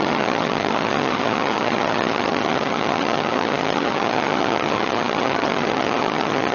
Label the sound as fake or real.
fake